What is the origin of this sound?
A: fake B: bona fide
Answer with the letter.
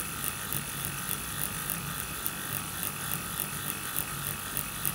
B